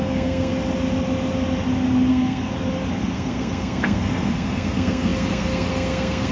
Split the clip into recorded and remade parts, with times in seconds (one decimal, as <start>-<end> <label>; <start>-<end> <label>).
0.0-0.5 remade; 0.5-2.1 recorded; 2.1-2.5 remade; 2.5-3.0 recorded; 3.0-6.3 remade